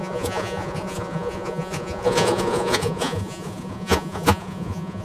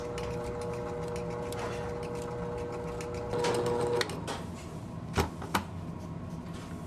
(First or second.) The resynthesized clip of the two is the first